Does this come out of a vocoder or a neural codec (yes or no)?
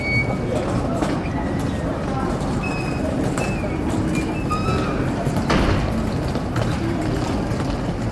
no